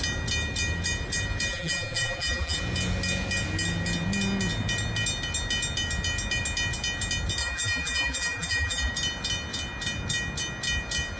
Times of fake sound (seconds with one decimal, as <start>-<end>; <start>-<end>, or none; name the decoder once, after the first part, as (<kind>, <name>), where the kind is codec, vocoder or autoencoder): 1.5-2.6 (vocoder, BigVGAN v2); 7.4-8.9